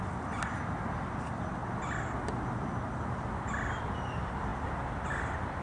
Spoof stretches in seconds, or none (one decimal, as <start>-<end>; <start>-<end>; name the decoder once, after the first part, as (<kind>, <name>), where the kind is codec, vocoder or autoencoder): none